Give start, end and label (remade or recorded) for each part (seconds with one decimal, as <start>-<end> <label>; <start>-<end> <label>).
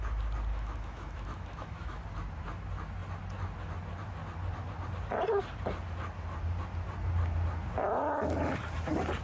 0.0-0.5 recorded; 0.5-2.0 remade; 2.0-9.2 recorded